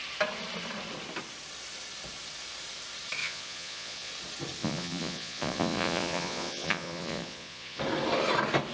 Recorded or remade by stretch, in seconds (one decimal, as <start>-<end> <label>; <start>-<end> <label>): 0.0-3.2 recorded; 3.2-4.1 remade; 4.1-4.6 recorded; 4.6-7.8 remade; 7.8-8.7 recorded